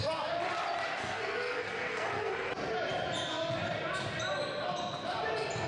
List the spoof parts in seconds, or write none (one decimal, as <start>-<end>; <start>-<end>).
1.0-2.5